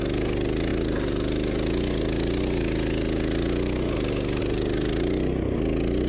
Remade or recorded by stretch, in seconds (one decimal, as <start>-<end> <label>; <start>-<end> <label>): 0.0-6.1 recorded